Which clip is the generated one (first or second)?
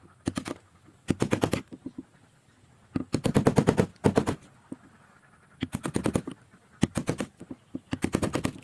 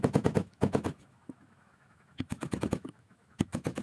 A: second